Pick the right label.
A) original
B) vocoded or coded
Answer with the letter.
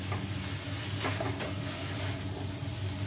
A